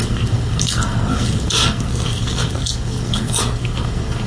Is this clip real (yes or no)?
no